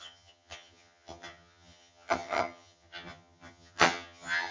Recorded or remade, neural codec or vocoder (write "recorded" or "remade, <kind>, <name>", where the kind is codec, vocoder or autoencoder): remade, vocoder, HiFi-GAN